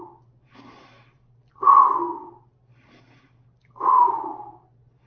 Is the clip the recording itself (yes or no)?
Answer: yes